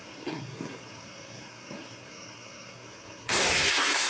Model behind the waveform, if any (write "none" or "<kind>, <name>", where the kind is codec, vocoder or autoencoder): codec, SNAC